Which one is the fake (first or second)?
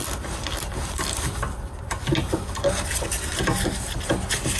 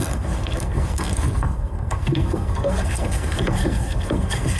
second